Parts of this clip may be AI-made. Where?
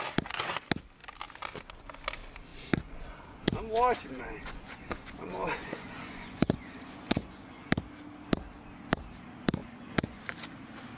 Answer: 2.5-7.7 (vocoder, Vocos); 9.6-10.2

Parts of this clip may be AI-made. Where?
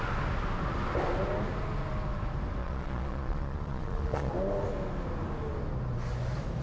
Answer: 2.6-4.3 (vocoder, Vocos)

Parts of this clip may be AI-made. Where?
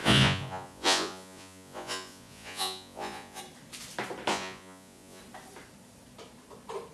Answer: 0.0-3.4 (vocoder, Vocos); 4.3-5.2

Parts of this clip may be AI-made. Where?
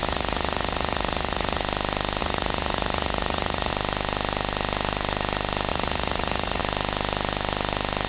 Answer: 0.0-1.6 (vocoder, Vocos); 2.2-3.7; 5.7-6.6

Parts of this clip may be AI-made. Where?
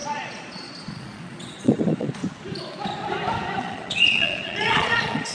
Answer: 0.0-2.2 (vocoder, Vocos); 3.6-5.3